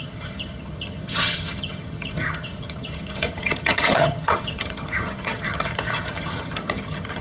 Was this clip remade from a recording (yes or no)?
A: yes